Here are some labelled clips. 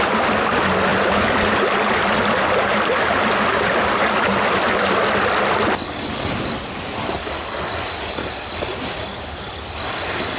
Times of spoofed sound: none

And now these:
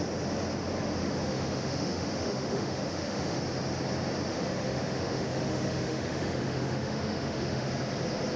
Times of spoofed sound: 1.0-3.4 (autoencoder, DAC-VAE); 4.3-7.7

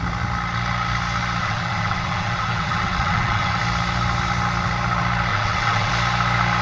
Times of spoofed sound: 1.4-3.6 (vocoder, WaveNeXt); 5.3-5.9

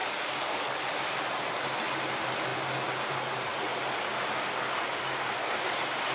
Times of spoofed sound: 0.0-0.8 (codec, DAC)